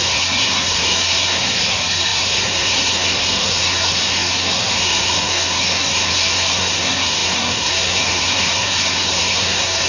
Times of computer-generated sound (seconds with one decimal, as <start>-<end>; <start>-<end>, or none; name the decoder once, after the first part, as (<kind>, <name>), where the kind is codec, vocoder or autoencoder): 0.0-9.9 (codec, SNAC)